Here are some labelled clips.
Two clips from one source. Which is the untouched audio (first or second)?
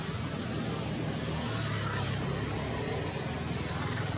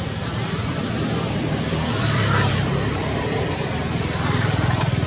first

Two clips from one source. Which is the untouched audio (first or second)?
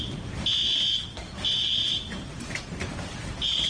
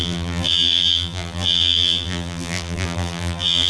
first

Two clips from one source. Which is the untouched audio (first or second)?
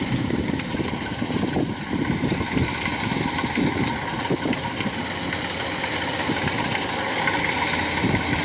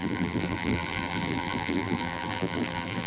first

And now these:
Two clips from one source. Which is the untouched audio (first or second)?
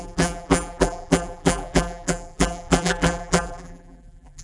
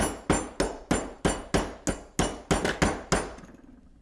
second